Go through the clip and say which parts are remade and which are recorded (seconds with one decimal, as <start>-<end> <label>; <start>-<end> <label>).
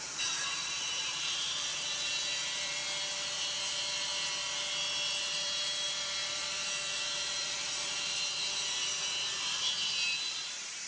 0.0-2.8 remade; 2.8-5.2 recorded; 5.2-10.9 remade